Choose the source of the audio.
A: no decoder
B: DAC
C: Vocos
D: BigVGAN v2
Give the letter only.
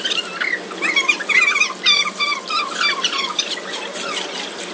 A